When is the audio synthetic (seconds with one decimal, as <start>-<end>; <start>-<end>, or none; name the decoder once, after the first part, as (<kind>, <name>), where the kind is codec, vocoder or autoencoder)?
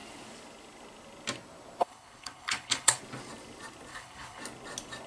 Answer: 1.8-3.0 (codec, HILCodec); 3.9-4.4